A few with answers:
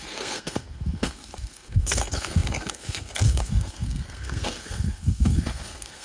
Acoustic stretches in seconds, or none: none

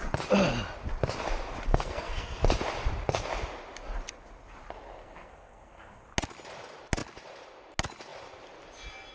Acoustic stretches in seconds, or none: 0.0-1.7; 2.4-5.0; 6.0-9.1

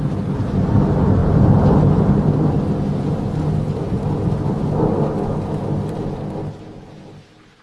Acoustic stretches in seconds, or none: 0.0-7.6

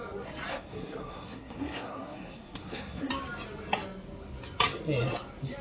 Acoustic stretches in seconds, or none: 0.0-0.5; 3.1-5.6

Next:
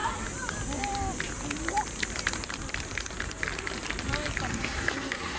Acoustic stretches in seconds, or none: 0.0-4.5

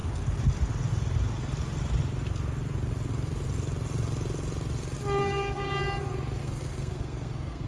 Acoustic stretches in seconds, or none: 0.0-5.2; 5.7-6.4

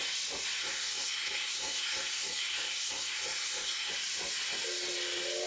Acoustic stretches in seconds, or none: 0.0-0.6; 3.9-5.5